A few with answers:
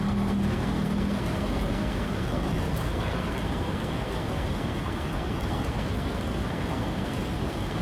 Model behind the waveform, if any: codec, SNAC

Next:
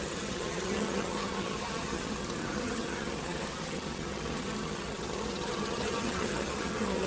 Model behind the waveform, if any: vocoder, HiFi-GAN